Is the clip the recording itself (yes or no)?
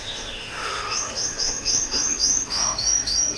no